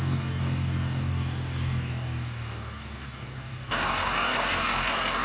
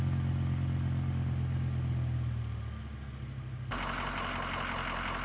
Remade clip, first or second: first